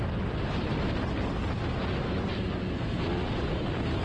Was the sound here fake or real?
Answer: real